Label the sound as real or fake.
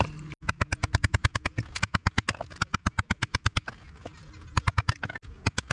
real